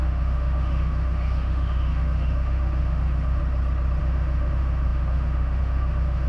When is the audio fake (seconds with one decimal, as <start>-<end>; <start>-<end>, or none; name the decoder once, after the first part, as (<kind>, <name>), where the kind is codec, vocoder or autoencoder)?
0.0-3.4 (autoencoder, DAC-VAE); 4.0-6.3